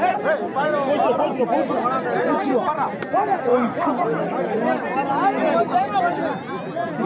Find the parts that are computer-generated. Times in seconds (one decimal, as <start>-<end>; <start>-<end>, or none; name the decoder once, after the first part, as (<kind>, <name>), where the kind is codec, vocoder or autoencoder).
3.5-4.5 (vocoder, BigVGAN v2); 5.3-6.0

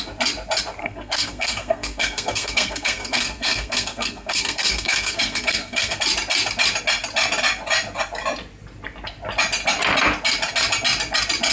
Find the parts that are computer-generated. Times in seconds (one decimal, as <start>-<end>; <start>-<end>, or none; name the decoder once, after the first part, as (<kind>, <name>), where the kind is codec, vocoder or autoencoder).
0.8-6.0 (codec, SNAC)

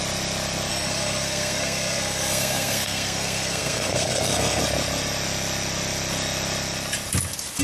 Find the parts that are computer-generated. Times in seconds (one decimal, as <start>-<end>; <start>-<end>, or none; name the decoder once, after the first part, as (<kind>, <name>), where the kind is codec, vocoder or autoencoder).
0.7-4.6 (codec, SNAC)

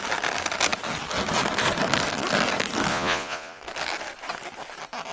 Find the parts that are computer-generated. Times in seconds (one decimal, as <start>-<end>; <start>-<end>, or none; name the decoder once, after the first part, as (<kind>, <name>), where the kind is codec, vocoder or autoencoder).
2.9-3.6 (vocoder, Vocos)

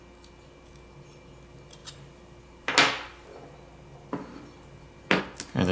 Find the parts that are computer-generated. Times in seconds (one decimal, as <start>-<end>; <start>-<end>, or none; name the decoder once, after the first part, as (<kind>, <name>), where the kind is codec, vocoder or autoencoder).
none

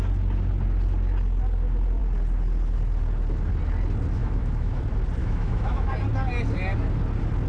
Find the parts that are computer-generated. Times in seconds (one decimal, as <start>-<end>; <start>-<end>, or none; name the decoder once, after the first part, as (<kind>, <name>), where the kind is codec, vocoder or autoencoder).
4.2-4.8 (autoencoder, DAC-VAE); 5.2-5.9